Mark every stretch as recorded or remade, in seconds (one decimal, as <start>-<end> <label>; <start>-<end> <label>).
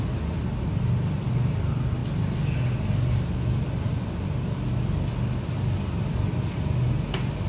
0.0-7.5 recorded